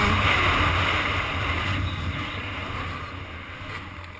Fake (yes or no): no